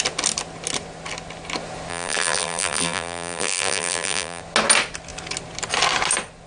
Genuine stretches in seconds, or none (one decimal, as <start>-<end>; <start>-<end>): 0.0-1.9; 4.4-6.5

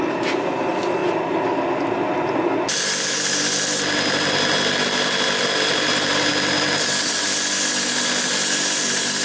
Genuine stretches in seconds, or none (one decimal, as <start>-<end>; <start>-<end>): 1.0-5.4; 6.3-8.2